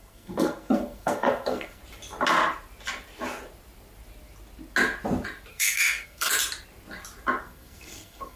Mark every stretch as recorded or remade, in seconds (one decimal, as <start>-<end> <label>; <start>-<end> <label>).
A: 0.0-1.8 remade; 1.8-5.5 recorded; 5.5-6.3 remade; 6.3-7.4 recorded; 7.4-8.4 remade